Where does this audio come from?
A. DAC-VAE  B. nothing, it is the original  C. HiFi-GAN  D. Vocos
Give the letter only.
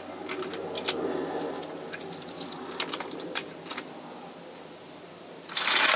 B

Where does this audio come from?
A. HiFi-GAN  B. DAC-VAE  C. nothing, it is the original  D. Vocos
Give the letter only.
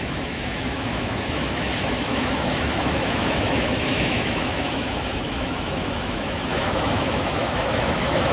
B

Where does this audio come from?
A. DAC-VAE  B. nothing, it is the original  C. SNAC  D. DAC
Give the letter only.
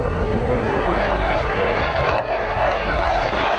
C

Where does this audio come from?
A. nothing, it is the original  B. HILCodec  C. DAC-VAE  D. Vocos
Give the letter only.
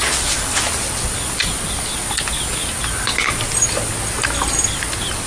A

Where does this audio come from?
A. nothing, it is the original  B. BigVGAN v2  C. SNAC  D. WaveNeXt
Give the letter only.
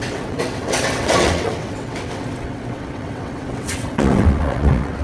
D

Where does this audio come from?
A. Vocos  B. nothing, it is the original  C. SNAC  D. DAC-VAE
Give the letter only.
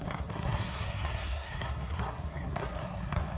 C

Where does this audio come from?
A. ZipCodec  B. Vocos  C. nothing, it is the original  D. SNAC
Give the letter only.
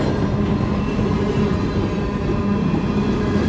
C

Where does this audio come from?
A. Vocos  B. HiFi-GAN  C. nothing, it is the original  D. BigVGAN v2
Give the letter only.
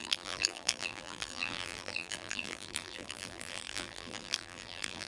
D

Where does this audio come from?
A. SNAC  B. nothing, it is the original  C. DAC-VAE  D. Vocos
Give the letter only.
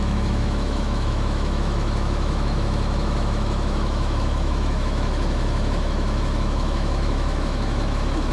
C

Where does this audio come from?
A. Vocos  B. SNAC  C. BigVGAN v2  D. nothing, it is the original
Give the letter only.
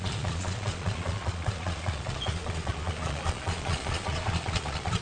A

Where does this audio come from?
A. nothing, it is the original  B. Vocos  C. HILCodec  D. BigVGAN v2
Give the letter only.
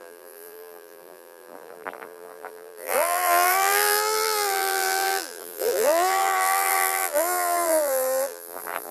D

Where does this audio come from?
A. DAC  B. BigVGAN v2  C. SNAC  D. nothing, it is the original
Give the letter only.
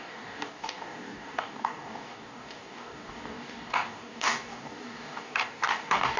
A